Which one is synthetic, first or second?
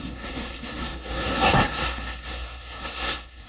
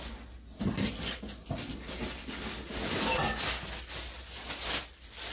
first